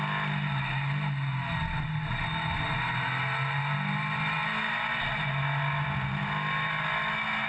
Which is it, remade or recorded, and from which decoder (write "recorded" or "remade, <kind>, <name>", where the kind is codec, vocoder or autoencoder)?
recorded